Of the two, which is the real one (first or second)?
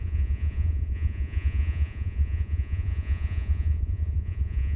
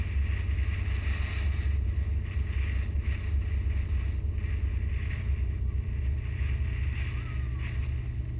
second